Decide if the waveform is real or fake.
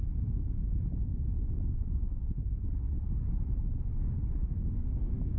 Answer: real